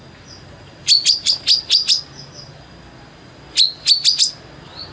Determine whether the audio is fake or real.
real